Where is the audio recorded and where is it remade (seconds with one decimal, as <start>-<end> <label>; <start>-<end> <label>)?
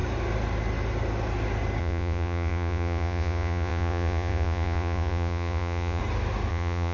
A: 0.0-1.8 recorded; 1.8-6.0 remade; 6.0-6.5 recorded; 6.5-6.9 remade